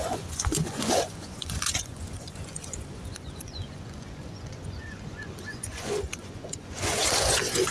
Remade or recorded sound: remade